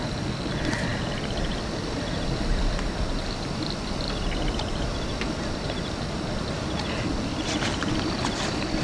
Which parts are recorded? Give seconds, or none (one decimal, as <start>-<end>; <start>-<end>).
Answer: 0.0-8.8